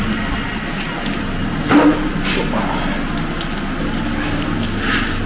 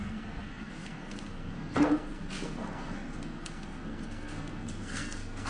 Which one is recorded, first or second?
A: first